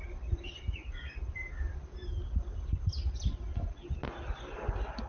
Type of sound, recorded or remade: recorded